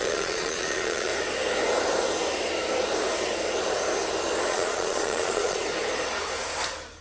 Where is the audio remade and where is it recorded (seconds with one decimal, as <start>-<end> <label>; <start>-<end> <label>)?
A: 0.0-1.1 remade; 1.1-4.5 recorded; 4.5-5.6 remade; 5.6-7.0 recorded